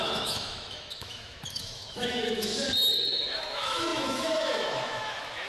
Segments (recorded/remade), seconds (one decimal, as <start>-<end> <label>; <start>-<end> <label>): 0.0-2.5 remade; 2.5-3.1 recorded; 3.1-5.5 remade